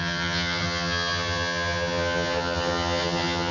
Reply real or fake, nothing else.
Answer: fake